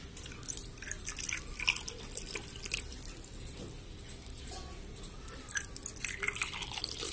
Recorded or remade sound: recorded